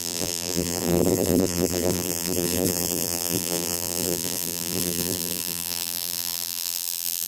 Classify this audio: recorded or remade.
remade